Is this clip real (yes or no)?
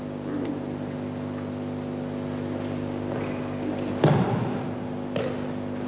yes